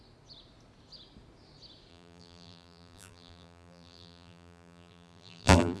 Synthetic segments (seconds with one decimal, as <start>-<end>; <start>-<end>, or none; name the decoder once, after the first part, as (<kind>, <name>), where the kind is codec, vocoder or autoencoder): 1.9-5.8 (vocoder, BigVGAN v2)